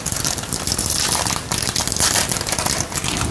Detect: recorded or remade recorded